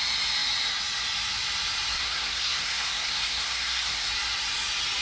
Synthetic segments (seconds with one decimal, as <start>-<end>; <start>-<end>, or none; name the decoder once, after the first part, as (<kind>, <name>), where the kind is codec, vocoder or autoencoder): 1.9-4.1 (codec, SNAC)